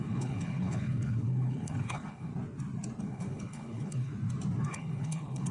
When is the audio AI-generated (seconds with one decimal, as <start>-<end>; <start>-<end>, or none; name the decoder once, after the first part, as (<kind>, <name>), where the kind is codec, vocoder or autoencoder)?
0.0-2.3 (codec, HILCodec); 3.0-4.1; 4.7-5.5